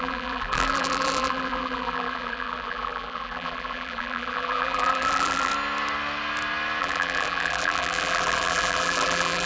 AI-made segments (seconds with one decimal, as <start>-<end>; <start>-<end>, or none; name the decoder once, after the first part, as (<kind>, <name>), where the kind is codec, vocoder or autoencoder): 0.0-5.5 (vocoder, BigVGAN v2); 6.8-9.5